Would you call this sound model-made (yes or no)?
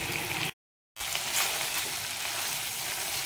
no